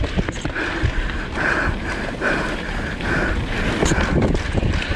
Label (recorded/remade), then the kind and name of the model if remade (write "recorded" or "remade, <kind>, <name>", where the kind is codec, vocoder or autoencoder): remade, vocoder, BigVGAN v2